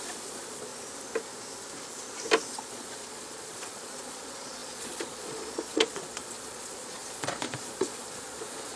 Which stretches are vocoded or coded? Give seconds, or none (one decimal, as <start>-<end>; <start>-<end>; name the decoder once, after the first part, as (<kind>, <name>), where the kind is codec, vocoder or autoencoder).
0.0-0.7 (vocoder, Vocos); 2.6-8.8